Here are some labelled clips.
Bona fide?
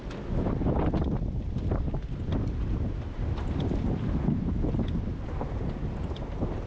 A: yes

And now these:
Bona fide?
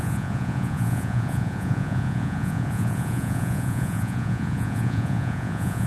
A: no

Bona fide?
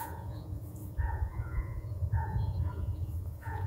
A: no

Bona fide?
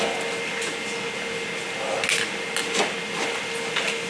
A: yes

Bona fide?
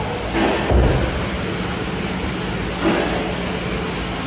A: yes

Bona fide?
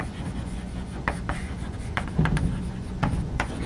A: no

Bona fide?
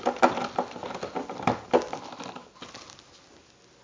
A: yes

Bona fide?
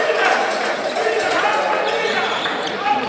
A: no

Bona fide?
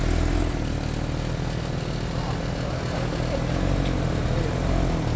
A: yes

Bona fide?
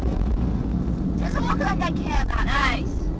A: no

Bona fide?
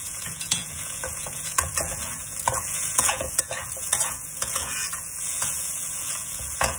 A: no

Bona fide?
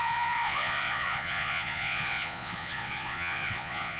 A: no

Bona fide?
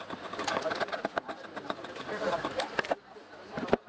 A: yes